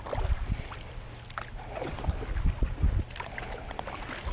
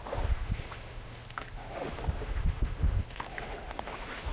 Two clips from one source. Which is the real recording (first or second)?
first